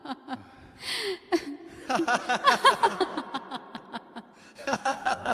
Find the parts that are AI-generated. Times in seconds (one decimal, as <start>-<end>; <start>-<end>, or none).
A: 2.8-3.2; 4.4-5.3